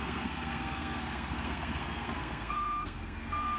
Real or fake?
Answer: fake